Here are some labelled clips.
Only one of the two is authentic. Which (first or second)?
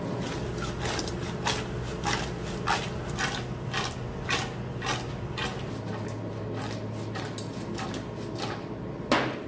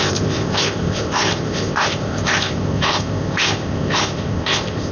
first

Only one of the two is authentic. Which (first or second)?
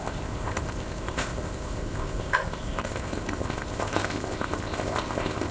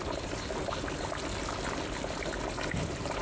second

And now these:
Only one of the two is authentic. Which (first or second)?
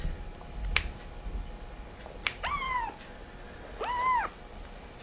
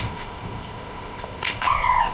first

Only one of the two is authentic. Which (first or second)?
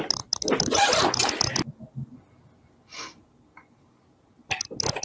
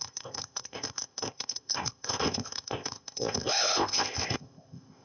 first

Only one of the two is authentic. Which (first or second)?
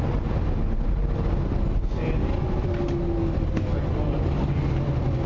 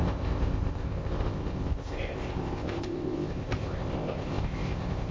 first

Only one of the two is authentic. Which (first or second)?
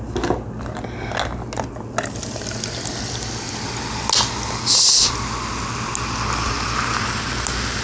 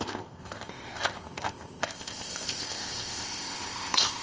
first